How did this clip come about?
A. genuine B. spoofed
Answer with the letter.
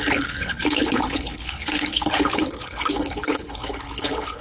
B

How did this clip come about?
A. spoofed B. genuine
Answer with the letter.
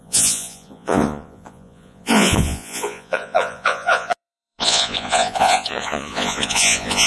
A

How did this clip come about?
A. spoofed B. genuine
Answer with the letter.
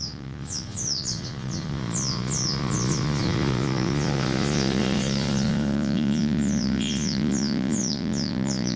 A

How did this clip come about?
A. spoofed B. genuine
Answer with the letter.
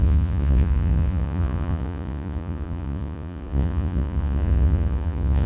A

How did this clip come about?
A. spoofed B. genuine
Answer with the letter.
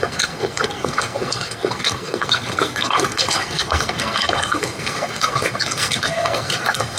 A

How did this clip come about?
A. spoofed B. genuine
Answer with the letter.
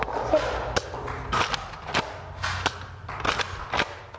B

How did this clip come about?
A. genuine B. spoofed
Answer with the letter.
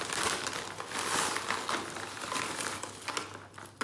A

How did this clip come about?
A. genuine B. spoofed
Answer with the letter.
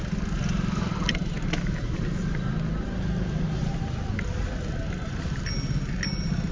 A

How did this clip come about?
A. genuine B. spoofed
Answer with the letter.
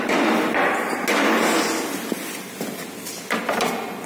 A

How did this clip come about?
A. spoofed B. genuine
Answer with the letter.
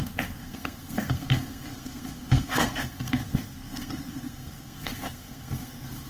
A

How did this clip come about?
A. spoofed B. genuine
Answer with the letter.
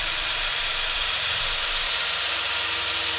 A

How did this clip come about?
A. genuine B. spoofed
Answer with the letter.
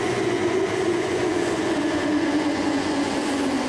B